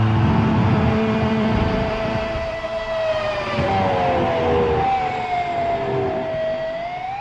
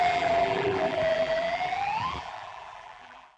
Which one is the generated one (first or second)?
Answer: second